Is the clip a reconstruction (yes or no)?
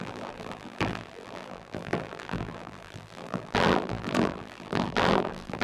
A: yes